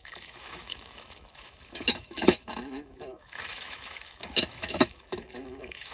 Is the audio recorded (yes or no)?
no